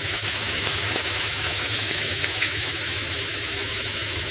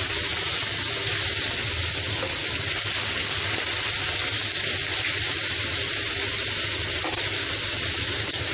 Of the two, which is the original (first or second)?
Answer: second